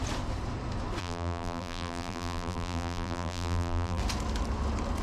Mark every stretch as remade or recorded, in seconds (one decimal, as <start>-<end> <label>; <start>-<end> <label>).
0.0-1.0 recorded; 1.0-4.0 remade; 4.0-5.0 recorded